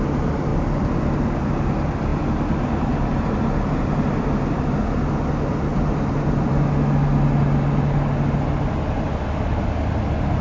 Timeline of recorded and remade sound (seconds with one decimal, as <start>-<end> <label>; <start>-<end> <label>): 0.0-0.5 recorded; 0.5-1.1 remade; 1.1-5.7 recorded; 5.7-6.6 remade; 6.6-10.4 recorded